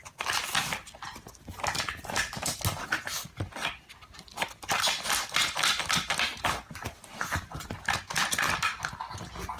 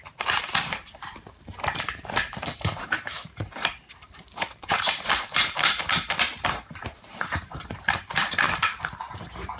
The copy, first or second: second